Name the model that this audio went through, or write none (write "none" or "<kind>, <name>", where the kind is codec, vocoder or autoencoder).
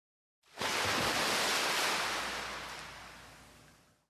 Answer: none